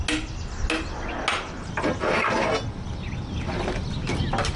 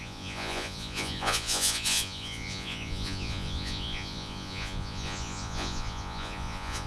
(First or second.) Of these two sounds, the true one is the first